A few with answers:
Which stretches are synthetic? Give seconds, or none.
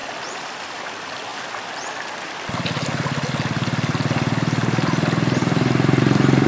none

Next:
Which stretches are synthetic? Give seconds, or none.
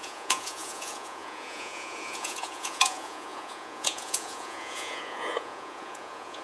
0.0-6.4 (vocoder, Vocos)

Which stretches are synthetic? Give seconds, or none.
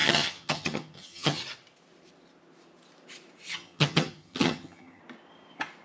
0.0-1.4 (vocoder, HiFi-GAN); 3.5-5.0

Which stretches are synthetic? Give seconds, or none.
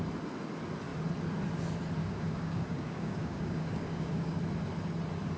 2.0-4.4 (codec, DAC)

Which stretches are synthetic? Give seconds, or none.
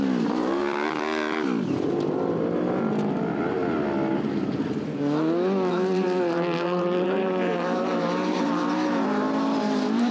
0.0-0.6 (vocoder, BigVGAN v2); 5.7-10.1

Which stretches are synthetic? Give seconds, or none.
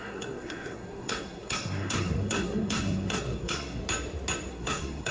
0.0-3.8 (codec, SNAC); 4.5-5.1